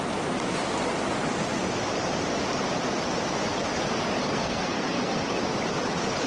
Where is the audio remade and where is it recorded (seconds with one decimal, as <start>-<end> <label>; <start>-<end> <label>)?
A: 0.0-4.2 recorded; 4.2-5.2 remade; 5.2-6.3 recorded